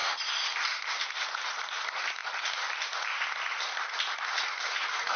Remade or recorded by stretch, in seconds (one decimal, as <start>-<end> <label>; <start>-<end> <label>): 0.0-5.2 recorded